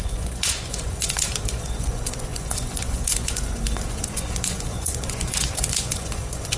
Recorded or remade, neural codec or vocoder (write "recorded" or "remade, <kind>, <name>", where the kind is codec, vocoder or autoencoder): remade, vocoder, Vocos